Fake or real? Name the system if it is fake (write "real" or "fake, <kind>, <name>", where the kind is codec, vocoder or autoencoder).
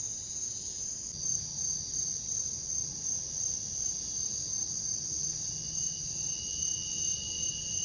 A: real